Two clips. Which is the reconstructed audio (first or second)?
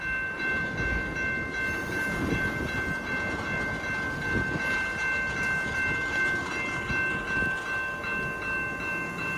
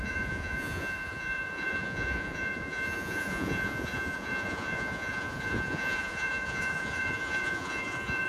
second